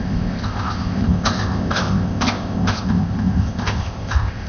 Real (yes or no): no